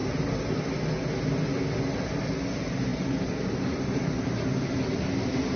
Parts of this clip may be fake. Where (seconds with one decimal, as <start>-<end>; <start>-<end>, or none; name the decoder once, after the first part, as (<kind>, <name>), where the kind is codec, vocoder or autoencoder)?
none